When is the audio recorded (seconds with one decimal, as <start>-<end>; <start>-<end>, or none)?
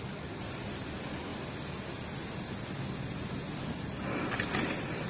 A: 0.0-5.1